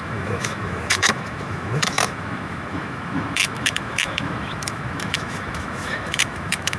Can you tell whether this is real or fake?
fake